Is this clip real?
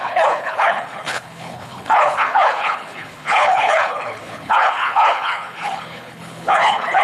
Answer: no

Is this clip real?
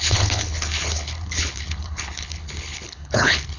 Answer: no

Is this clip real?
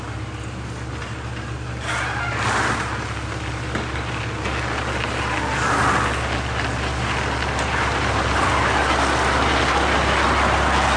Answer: yes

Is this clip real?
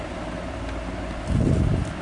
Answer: yes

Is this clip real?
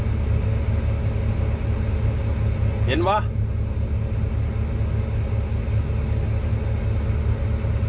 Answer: yes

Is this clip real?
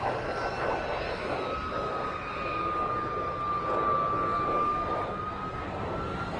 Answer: yes